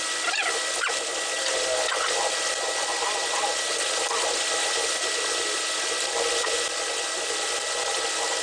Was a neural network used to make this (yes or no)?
no